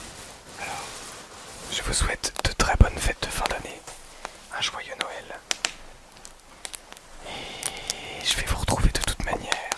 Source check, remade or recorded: recorded